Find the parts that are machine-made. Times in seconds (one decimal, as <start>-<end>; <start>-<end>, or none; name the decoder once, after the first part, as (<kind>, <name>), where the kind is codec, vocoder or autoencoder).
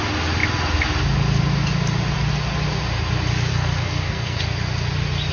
3.5-4.4 (codec, SNAC)